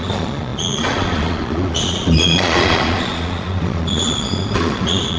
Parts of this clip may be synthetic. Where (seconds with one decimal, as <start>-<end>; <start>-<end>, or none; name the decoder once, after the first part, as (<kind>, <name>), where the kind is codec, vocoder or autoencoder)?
0.0-5.2 (vocoder, Vocos)